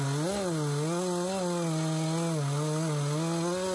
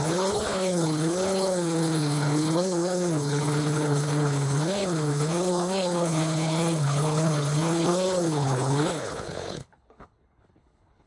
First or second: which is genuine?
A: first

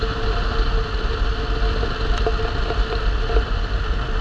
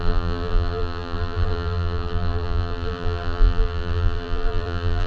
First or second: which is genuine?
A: first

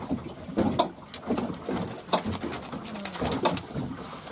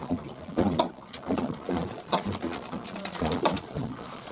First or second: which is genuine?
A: first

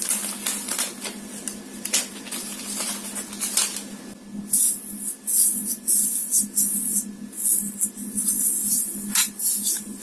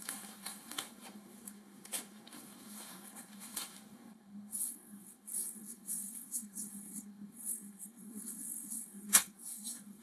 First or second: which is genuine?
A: first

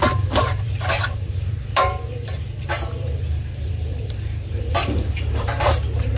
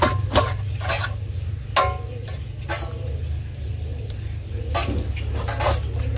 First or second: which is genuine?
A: second